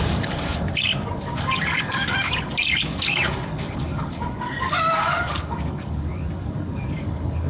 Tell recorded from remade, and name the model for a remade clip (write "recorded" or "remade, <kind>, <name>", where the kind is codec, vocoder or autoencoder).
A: remade, codec, DAC